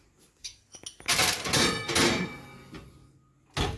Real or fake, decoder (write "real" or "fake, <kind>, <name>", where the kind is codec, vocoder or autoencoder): real